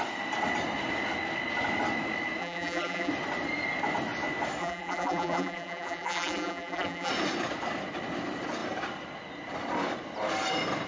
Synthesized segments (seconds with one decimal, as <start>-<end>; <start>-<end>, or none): 2.4-3.1; 4.6-7.1